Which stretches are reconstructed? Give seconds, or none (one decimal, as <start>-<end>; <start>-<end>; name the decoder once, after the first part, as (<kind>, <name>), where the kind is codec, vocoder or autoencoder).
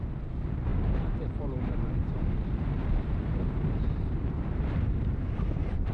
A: 0.0-5.9 (vocoder, BigVGAN v2)